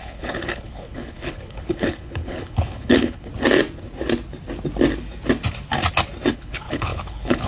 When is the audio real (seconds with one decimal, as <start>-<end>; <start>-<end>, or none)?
3.3-6.3